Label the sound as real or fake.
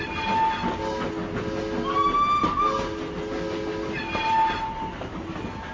real